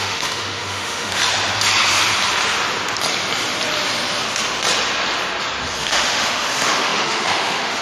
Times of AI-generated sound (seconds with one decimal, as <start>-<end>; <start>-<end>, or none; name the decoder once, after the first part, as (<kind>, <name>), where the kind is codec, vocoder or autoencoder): 0.0-1.2 (autoencoder, DAC-VAE); 5.8-7.8